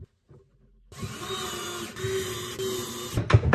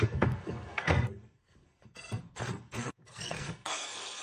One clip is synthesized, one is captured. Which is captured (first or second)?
first